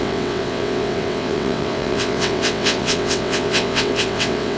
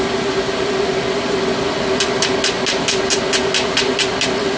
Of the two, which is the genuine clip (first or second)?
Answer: second